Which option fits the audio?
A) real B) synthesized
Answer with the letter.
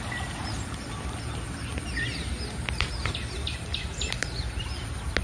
A